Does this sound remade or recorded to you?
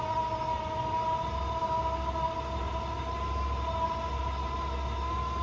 recorded